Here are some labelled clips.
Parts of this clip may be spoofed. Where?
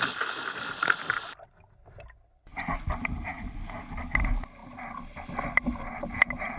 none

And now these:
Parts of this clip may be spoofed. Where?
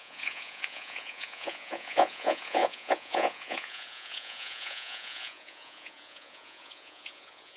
0.0-7.6 (vocoder, Vocos)